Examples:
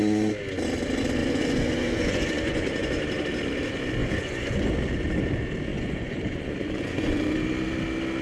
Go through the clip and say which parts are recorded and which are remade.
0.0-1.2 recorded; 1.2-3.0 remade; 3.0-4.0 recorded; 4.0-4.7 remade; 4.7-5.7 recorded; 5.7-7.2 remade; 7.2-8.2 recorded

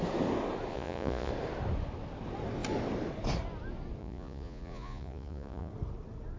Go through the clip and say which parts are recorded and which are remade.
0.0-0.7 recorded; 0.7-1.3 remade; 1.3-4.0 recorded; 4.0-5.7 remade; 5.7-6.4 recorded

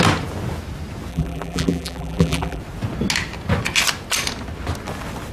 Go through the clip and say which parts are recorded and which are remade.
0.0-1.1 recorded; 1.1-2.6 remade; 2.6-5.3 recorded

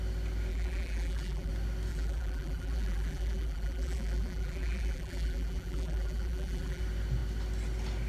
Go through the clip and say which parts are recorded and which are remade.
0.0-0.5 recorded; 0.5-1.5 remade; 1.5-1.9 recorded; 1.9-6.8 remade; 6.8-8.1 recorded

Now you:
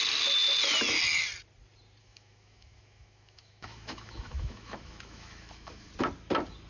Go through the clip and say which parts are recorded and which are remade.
0.0-2.0 recorded; 2.0-5.9 remade; 5.9-6.7 recorded

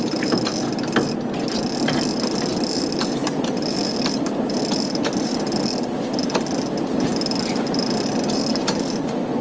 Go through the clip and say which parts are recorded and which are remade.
0.0-3.2 recorded; 3.2-6.0 remade; 6.0-9.4 recorded